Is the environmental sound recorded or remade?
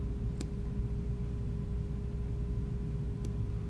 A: recorded